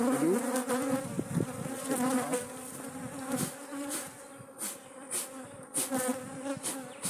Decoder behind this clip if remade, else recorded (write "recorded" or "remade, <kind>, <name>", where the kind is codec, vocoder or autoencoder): recorded